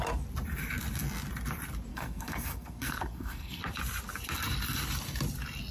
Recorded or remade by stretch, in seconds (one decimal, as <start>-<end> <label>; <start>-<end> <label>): 0.0-1.9 recorded; 1.9-3.6 remade; 3.6-5.7 recorded